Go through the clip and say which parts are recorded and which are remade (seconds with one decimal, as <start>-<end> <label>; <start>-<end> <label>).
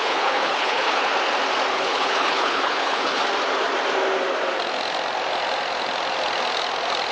0.0-1.1 remade; 1.1-1.7 recorded; 1.7-3.2 remade; 3.2-7.1 recorded